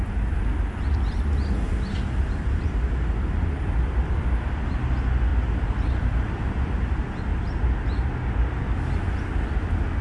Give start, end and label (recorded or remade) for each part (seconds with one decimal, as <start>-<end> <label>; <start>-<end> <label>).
0.0-10.0 recorded